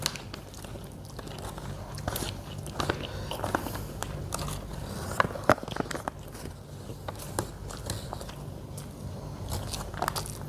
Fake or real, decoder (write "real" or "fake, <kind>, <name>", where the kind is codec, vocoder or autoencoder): real